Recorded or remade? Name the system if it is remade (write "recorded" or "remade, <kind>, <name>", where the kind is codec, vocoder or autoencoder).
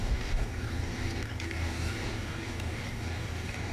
remade, codec, DAC